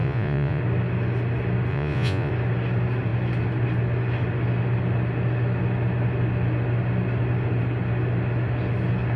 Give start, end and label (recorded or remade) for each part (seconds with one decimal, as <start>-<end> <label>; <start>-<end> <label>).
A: 0.0-0.6 remade; 0.6-1.7 recorded; 1.7-2.3 remade; 2.3-9.2 recorded